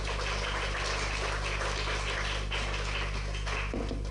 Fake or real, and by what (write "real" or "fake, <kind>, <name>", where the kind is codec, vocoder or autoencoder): real